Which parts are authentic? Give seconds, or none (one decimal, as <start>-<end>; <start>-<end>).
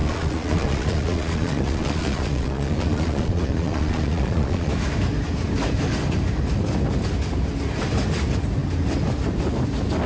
4.7-10.1